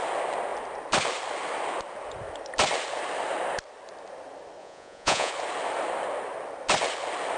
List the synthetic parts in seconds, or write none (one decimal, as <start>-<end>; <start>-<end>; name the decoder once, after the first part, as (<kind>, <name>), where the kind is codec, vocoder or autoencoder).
4.6-5.3 (vocoder, Vocos)